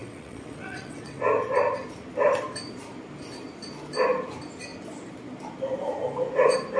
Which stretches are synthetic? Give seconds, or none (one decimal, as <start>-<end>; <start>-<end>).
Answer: 0.0-1.2